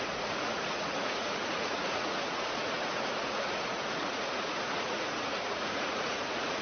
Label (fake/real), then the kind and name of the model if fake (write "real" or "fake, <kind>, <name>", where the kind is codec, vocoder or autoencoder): fake, vocoder, Vocos